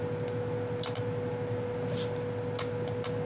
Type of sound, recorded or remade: recorded